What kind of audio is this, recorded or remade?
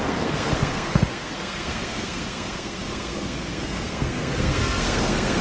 remade